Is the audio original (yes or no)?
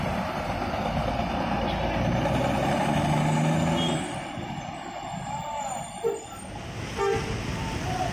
yes